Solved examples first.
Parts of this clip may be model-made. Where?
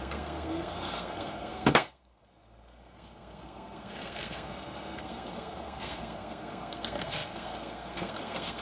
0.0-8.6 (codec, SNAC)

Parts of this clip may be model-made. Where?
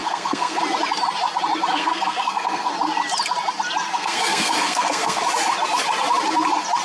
0.0-0.6 (codec, SNAC); 1.7-2.7; 3.9-5.2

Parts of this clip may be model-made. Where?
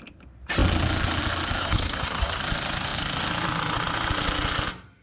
1.6-2.4 (codec, SNAC)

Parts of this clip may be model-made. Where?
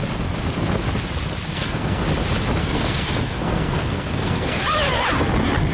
1.5-2.0 (codec, SNAC); 2.6-4.6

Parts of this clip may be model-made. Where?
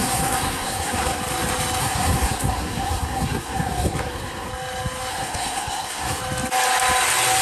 0.0-1.2 (codec, SNAC); 1.8-4.5; 5.1-6.2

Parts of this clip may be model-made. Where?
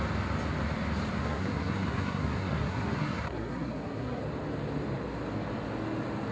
1.2-4.2 (codec, SNAC)